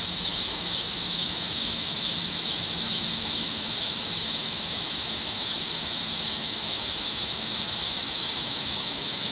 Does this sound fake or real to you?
fake